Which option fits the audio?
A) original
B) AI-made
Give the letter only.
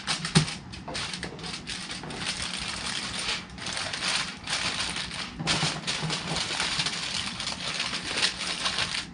A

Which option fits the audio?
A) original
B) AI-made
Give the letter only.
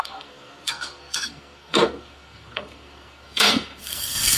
B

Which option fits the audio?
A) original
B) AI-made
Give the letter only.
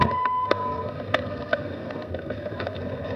B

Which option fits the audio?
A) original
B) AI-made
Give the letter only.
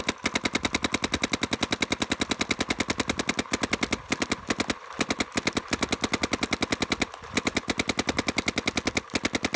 A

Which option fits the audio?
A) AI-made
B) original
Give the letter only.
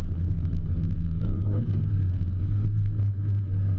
A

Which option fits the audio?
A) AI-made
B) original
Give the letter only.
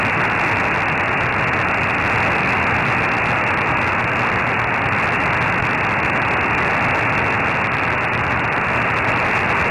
B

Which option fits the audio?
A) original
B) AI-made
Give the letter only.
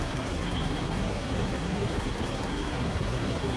B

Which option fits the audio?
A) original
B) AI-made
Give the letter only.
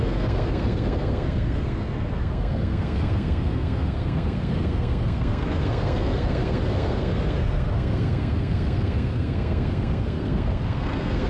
B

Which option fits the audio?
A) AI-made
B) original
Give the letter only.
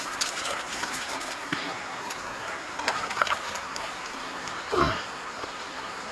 A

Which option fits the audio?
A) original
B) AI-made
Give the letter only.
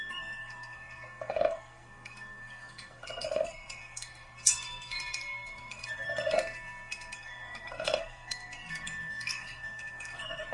B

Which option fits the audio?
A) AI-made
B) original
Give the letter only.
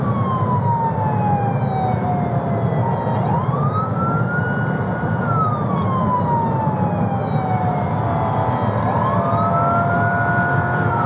B